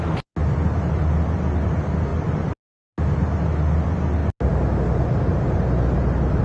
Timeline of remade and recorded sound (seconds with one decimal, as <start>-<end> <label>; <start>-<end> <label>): 0.0-0.4 recorded; 0.4-1.0 remade; 1.0-6.4 recorded